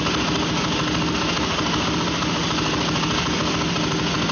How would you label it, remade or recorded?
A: recorded